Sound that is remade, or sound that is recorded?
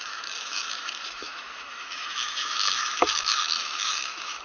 remade